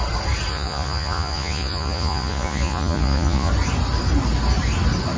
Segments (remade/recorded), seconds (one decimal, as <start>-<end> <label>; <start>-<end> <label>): 0.0-0.5 recorded; 0.5-3.5 remade; 3.5-5.2 recorded